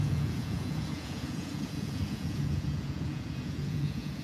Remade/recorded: remade